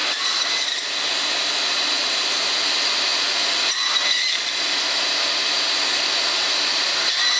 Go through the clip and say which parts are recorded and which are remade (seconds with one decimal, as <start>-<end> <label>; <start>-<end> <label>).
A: 0.0-7.4 recorded